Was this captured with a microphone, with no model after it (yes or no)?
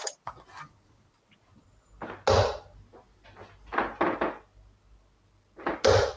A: yes